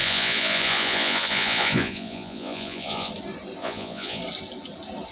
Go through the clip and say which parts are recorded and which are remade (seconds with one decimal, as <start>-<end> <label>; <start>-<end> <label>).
0.0-3.1 remade; 3.1-3.6 recorded; 3.6-4.2 remade; 4.2-5.1 recorded

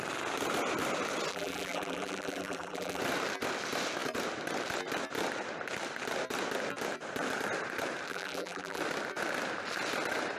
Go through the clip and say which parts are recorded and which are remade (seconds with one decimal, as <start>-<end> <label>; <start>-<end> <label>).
0.0-1.3 recorded; 1.3-3.0 remade; 3.0-8.1 recorded; 8.1-8.8 remade; 8.8-10.4 recorded

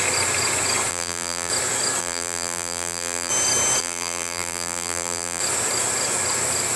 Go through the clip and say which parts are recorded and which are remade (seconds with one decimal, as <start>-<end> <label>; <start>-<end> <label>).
0.0-0.9 recorded; 0.9-1.5 remade; 1.5-2.0 recorded; 2.0-3.3 remade; 3.3-3.8 recorded; 3.8-5.4 remade; 5.4-6.8 recorded

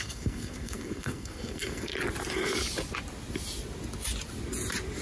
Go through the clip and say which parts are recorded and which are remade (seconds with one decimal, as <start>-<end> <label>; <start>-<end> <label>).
0.0-1.9 remade; 1.9-5.0 recorded